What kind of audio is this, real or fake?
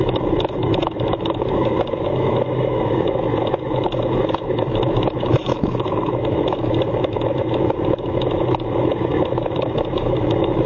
fake